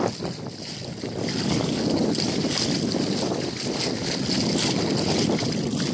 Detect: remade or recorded recorded